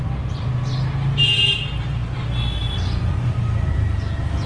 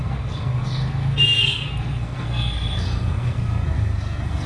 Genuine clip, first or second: first